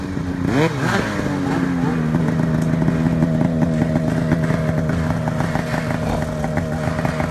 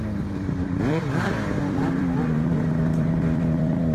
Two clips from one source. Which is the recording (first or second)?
first